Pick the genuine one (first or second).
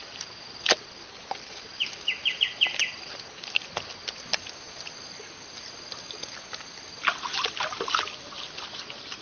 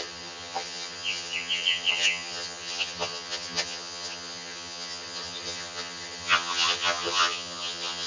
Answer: first